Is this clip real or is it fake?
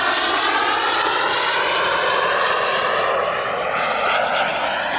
real